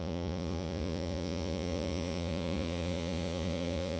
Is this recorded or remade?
remade